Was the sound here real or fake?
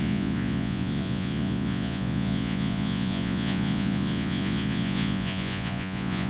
fake